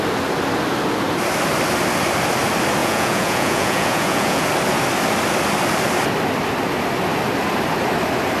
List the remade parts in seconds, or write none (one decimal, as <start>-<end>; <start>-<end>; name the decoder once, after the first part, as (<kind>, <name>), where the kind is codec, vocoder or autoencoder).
2.8-4.5 (vocoder, Vocos)